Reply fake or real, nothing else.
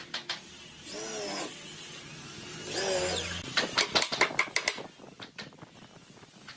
real